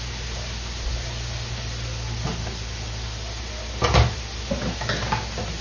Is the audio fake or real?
real